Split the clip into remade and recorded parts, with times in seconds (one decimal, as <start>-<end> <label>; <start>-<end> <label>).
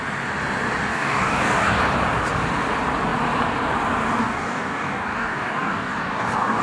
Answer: 0.0-0.9 recorded; 0.9-1.8 remade; 1.8-4.2 recorded; 4.2-6.6 remade